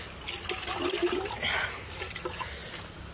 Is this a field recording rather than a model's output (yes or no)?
yes